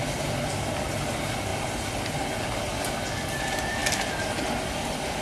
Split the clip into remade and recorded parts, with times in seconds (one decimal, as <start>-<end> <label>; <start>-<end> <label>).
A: 0.0-5.2 recorded